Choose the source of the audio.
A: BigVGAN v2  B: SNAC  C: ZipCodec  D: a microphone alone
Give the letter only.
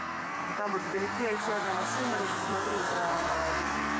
B